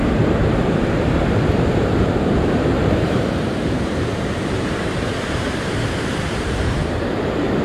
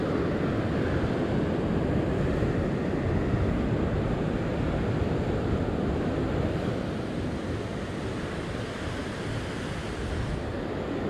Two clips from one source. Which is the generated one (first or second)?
first